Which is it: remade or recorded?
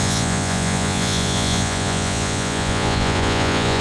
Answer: remade